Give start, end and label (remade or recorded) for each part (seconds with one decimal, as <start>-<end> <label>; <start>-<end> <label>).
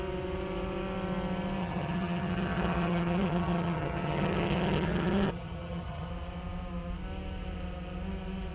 0.0-1.6 recorded; 1.6-6.1 remade; 6.1-8.5 recorded